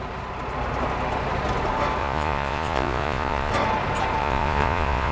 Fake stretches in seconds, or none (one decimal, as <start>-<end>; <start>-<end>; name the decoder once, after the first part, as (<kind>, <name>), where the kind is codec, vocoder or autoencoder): 2.0-3.5 (vocoder, Vocos); 4.2-5.1